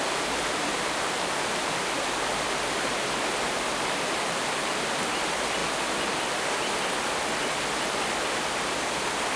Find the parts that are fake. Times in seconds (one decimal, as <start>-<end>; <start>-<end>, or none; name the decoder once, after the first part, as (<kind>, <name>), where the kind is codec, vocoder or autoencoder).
none